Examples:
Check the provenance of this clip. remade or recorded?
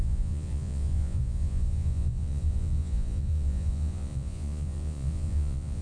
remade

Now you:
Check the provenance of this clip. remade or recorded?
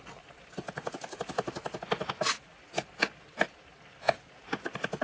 recorded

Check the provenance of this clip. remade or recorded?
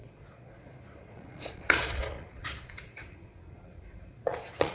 remade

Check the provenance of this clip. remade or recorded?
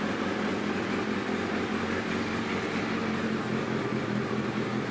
recorded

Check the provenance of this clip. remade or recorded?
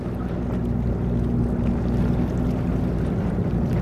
recorded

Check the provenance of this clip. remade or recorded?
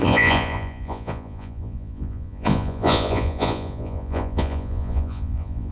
remade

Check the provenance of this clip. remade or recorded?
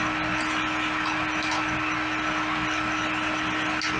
recorded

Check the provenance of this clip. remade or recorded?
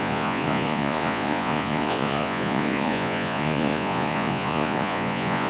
remade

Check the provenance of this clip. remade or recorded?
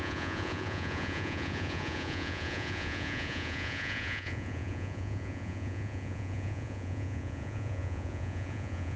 remade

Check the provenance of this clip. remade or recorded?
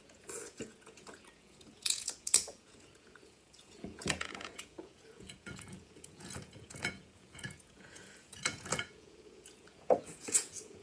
remade